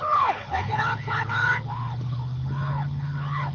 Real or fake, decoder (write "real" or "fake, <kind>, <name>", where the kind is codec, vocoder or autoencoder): fake, codec, HILCodec